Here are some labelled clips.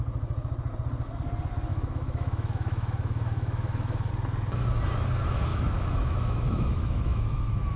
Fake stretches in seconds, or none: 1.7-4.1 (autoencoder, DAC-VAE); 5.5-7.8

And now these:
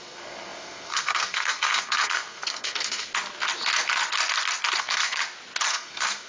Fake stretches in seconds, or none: 0.0-3.1 (codec, SNAC); 4.8-5.2; 5.7-6.3

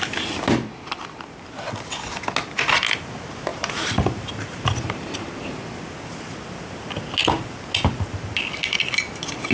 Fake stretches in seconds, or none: 3.5-5.3 (vocoder, BigVGAN v2)

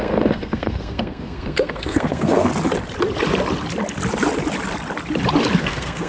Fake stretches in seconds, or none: 0.0-2.5 (codec, SNAC); 5.6-6.1

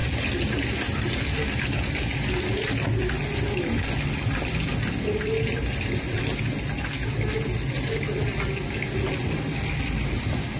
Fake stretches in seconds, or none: none

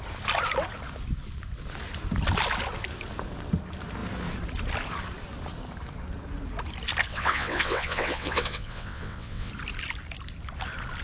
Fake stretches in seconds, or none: 7.1-9.5 (vocoder, WaveNeXt)

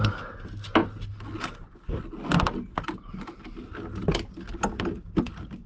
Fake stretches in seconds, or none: none

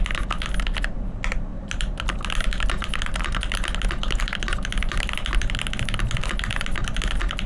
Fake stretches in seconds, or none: 1.5-2.3 (vocoder, BigVGAN v2); 4.0-5.3